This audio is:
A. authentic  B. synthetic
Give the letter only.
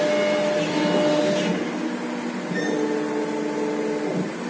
A